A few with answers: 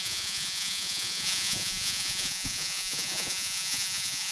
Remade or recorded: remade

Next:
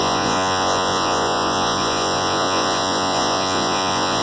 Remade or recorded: remade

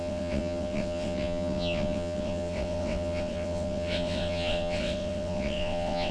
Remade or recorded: remade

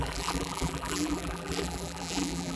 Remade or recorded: remade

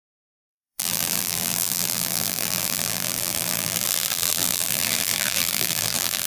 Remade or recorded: remade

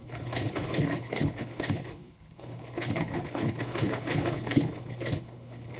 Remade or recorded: remade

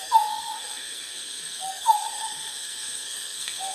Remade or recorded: remade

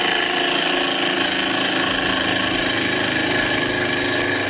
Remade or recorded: recorded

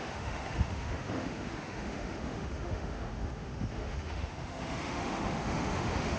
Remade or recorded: remade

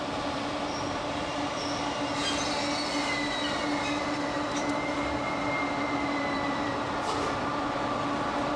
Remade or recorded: recorded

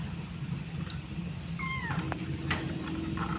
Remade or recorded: recorded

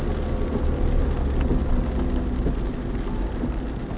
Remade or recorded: recorded